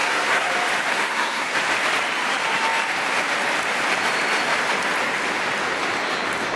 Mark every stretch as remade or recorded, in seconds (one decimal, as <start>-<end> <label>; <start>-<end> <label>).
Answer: 0.0-0.5 remade; 0.5-0.9 recorded; 0.9-1.6 remade; 1.6-6.6 recorded